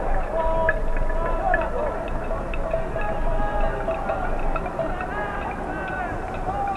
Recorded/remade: recorded